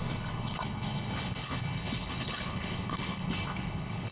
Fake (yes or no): yes